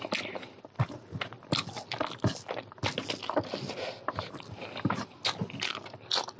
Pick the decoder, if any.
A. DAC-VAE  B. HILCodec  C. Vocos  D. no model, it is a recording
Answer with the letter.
D